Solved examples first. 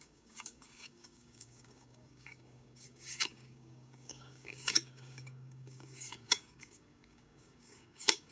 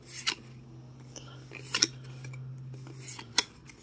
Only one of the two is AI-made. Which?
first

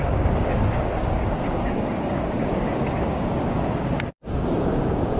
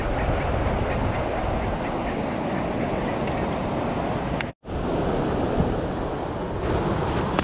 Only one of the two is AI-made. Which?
first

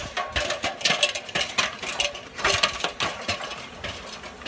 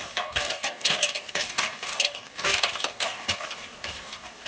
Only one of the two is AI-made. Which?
second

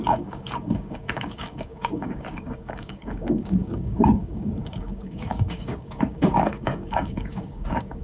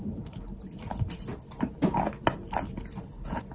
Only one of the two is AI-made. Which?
first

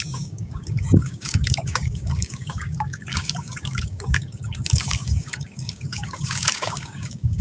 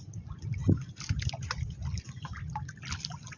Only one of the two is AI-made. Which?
first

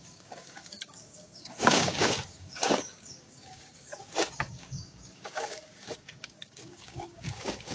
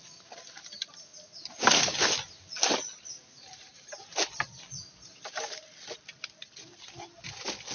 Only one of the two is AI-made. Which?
first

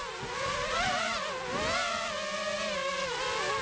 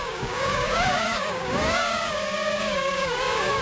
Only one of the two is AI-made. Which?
second